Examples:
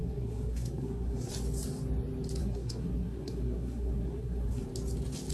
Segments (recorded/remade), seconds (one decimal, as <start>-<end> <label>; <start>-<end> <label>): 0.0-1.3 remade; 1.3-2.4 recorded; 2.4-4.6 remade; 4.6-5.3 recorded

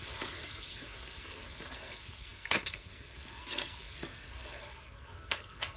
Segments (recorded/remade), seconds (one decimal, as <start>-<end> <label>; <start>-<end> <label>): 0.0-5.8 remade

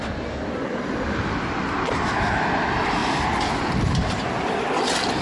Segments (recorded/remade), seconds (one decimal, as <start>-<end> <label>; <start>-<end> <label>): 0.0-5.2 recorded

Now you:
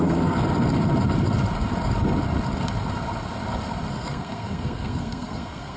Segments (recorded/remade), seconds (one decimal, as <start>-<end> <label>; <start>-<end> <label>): 0.0-0.4 remade; 0.4-3.9 recorded; 3.9-5.8 remade

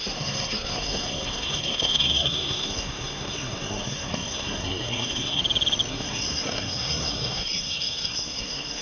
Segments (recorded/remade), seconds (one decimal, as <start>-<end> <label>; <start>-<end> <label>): 0.0-5.4 remade; 5.4-5.9 recorded; 5.9-8.8 remade